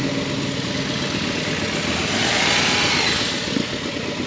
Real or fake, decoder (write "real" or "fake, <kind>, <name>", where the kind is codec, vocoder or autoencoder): real